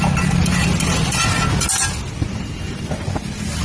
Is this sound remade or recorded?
recorded